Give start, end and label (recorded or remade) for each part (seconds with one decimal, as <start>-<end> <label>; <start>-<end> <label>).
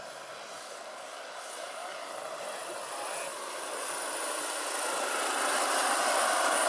0.0-0.6 recorded; 0.6-2.1 remade; 2.1-3.3 recorded; 3.3-3.9 remade; 3.9-6.7 recorded